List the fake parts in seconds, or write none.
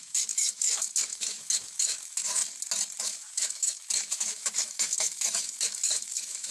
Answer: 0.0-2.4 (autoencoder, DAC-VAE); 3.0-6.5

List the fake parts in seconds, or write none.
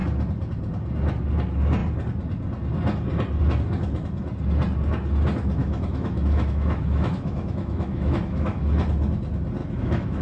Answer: 5.6-8.6 (autoencoder, DAC-VAE); 9.6-10.2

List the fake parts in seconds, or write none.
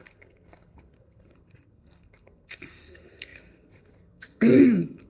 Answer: 0.0-5.1 (codec, SNAC)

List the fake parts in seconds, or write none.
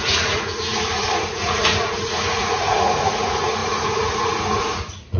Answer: 0.0-5.2 (vocoder, Vocos)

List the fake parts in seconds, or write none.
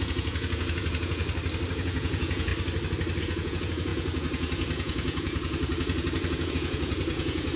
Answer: 0.0-1.2 (vocoder, Vocos); 1.7-2.5; 3.2-7.6